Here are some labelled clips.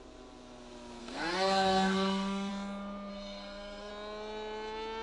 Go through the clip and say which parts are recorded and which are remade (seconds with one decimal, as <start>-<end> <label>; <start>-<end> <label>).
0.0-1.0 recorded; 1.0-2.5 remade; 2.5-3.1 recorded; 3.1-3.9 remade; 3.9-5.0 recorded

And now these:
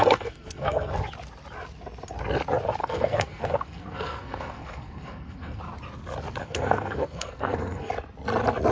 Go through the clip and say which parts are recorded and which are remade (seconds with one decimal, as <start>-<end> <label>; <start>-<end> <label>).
0.0-0.9 remade; 0.9-2.8 recorded; 2.8-5.6 remade; 5.6-6.4 recorded; 6.4-7.9 remade; 7.9-8.7 recorded

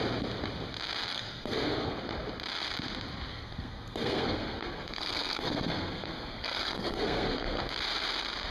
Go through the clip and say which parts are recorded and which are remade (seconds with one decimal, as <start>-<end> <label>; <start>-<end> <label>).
0.0-1.1 recorded; 1.1-2.0 remade; 2.0-3.3 recorded; 3.3-7.6 remade; 7.6-8.5 recorded